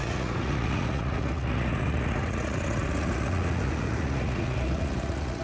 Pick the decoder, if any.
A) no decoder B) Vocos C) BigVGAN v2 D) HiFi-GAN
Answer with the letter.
B